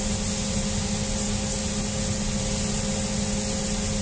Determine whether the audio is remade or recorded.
recorded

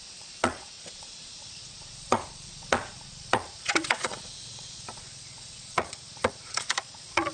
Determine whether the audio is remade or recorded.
remade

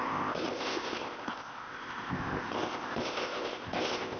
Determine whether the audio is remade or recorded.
remade